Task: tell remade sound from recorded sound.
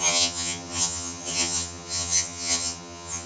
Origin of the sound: remade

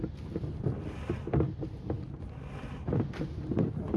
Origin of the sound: recorded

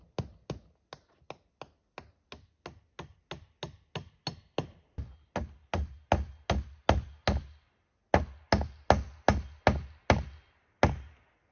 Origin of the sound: recorded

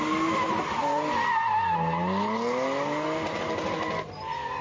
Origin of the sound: recorded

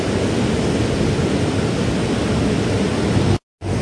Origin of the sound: recorded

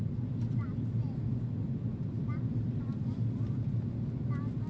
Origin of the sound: recorded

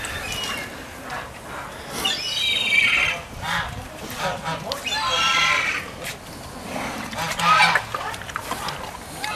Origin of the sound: recorded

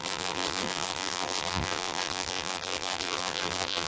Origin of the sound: remade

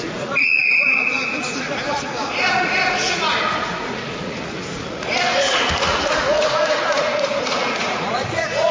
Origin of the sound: remade